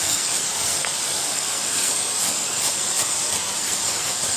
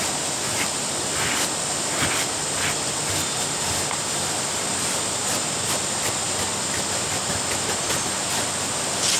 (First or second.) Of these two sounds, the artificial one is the first